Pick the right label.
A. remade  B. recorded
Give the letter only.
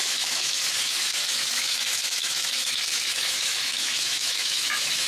A